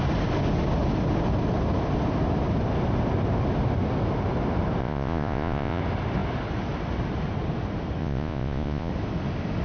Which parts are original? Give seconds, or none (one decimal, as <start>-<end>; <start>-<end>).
0.0-4.8; 5.8-8.0; 8.9-9.6